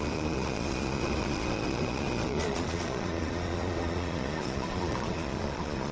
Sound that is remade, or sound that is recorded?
remade